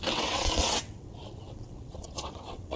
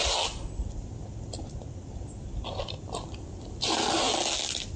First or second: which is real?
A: second